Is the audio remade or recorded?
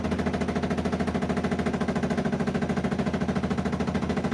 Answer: recorded